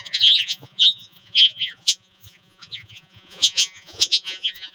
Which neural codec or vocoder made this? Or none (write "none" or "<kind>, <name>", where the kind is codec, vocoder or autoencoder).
vocoder, Vocos